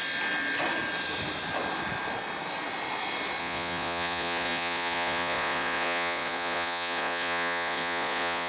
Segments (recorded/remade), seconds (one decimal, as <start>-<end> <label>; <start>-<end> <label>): 0.0-3.4 recorded; 3.4-8.5 remade